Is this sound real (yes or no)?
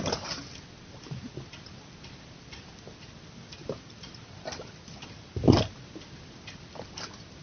yes